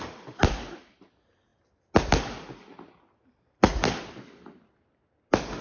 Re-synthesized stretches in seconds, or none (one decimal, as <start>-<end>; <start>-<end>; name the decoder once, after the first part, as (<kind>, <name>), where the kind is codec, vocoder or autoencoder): none

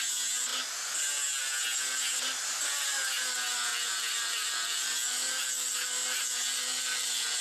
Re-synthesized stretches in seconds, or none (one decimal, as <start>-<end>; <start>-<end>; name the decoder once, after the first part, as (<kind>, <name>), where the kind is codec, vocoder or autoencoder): 3.7-7.4 (vocoder, BigVGAN v2)

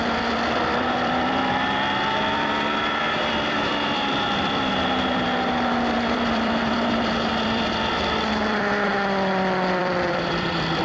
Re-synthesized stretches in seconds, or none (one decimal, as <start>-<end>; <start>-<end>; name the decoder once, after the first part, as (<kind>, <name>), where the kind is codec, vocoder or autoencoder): 0.0-10.8 (vocoder, BigVGAN v2)

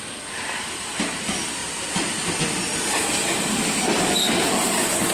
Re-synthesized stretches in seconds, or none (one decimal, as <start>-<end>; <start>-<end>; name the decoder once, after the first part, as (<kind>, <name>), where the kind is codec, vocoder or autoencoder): 0.0-1.6 (vocoder, BigVGAN v2)

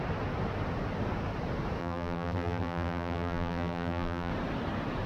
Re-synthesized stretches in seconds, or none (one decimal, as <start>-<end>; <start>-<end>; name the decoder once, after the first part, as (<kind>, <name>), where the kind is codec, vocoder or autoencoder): 1.8-4.3 (vocoder, BigVGAN v2)

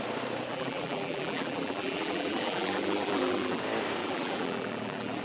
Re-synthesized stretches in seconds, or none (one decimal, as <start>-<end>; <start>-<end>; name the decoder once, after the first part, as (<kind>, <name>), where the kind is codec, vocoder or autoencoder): 0.5-3.6 (vocoder, BigVGAN v2); 4.0-5.2

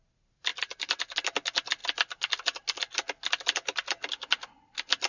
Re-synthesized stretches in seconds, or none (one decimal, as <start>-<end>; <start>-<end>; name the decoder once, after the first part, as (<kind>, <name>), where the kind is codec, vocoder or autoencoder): 0.5-1.0 (vocoder, BigVGAN v2)